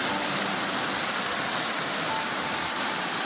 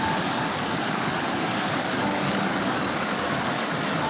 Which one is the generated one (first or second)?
second